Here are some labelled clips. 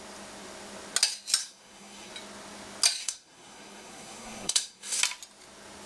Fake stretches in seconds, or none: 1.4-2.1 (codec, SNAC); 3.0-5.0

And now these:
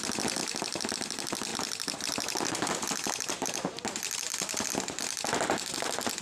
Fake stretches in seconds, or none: none

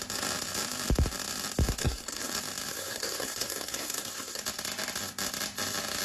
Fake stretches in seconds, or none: 1.8-2.3 (codec, SNAC); 2.7-4.4

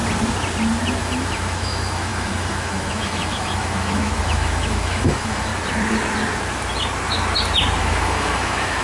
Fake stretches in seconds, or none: 1.0-5.5 (autoencoder, DAC-VAE); 7.8-8.8

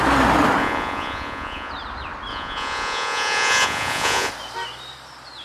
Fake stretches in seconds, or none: 0.6-1.7 (vocoder, Vocos); 2.3-4.3

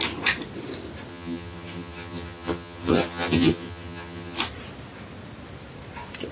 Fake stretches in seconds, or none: 1.1-4.4 (vocoder, HiFi-GAN)

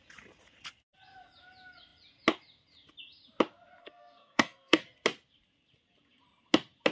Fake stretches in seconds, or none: 3.8-4.8 (codec, SNAC)